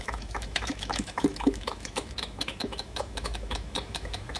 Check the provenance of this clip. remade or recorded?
remade